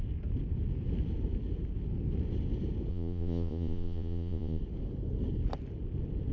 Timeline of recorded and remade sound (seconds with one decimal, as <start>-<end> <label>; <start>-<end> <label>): 0.0-2.9 recorded; 2.9-4.6 remade; 4.6-6.3 recorded